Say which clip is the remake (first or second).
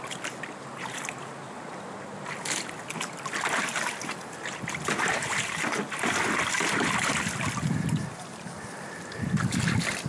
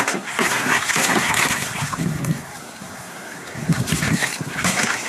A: second